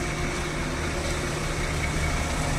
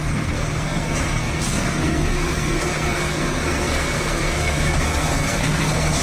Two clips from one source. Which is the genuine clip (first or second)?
first